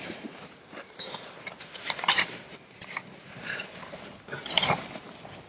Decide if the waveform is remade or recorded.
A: remade